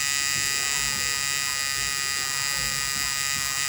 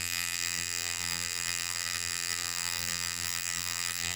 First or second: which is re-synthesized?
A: second